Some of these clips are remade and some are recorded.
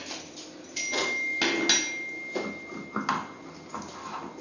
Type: recorded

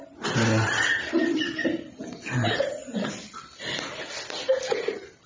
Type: recorded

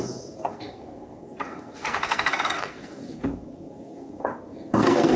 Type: remade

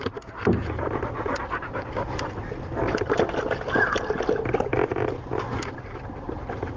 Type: recorded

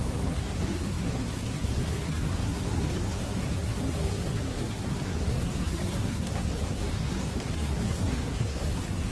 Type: remade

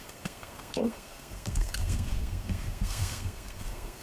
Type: remade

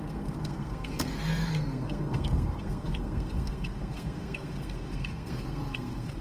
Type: remade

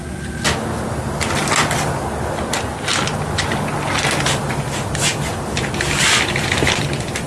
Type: recorded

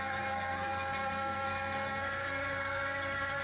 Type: remade